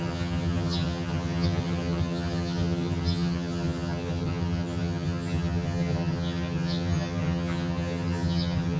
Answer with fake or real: fake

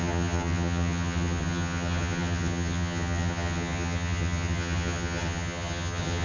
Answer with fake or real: fake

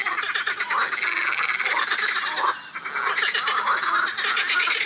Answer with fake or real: real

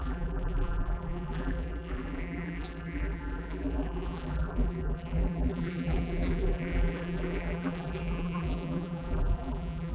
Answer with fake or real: fake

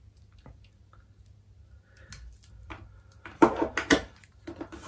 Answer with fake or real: real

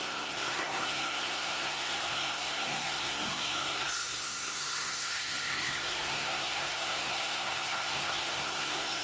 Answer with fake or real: fake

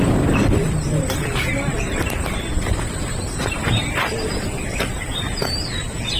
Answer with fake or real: fake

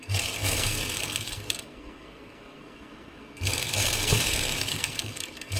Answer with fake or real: fake